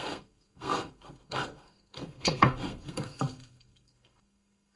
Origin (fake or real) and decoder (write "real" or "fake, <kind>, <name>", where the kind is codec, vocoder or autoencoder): fake, codec, SNAC